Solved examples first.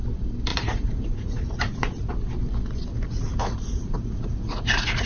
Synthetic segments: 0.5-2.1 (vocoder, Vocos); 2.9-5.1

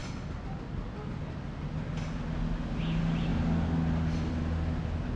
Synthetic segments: none